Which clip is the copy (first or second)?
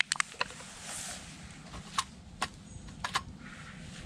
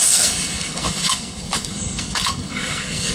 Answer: second